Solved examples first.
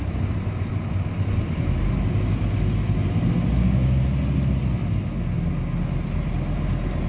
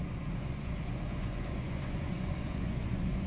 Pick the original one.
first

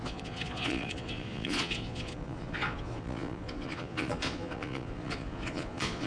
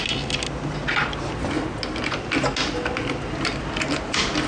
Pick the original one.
second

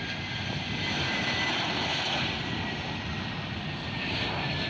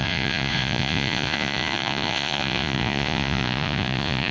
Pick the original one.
first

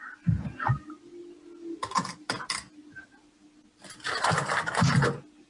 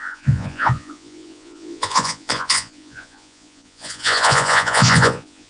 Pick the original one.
first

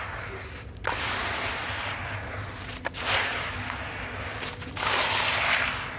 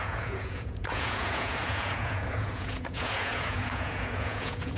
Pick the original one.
first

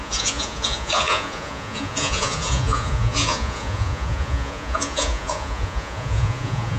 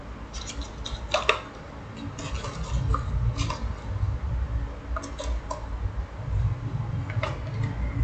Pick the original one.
second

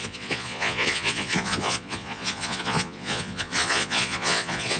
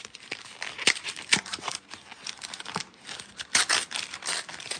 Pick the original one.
second